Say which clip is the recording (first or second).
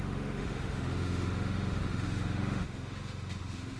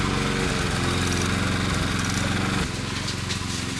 second